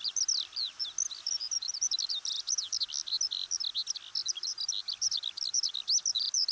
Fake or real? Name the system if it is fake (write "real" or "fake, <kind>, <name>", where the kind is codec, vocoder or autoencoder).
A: real